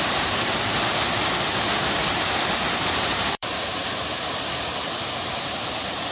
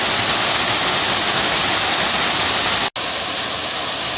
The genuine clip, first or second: second